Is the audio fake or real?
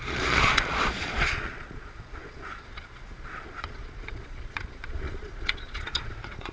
fake